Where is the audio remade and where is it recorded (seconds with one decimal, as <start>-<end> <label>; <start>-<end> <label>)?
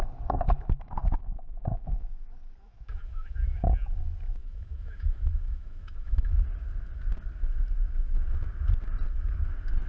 0.0-2.6 recorded; 2.6-3.6 remade; 3.6-4.4 recorded; 4.4-6.3 remade; 6.3-9.9 recorded